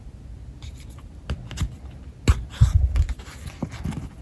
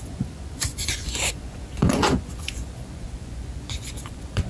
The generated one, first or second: second